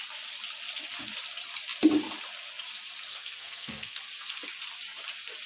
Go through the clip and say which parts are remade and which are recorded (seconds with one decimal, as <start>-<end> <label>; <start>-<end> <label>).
0.0-3.1 recorded; 3.1-4.0 remade; 4.0-5.5 recorded